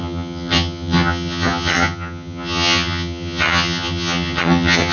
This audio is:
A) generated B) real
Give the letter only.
A